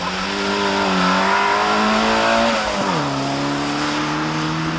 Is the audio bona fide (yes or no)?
yes